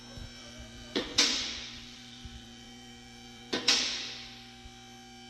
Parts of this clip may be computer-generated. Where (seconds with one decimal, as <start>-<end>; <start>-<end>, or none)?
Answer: 0.4-3.6